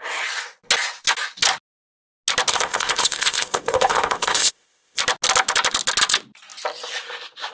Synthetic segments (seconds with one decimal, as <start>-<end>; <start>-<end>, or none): 2.5-5.0